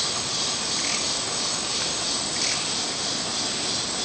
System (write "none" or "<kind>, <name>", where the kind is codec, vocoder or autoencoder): none